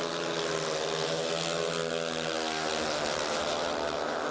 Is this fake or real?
real